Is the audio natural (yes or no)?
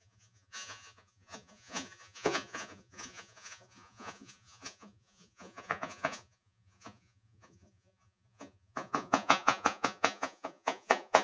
no